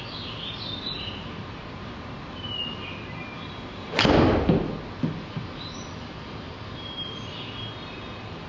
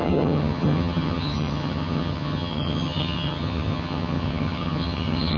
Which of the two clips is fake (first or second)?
second